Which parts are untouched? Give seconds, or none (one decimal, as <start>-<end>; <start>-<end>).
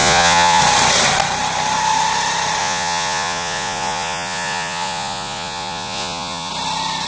0.6-2.6; 6.5-7.1